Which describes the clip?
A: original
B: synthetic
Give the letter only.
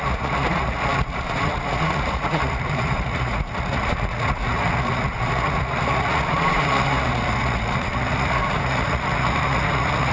B